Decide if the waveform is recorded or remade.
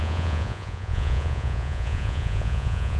remade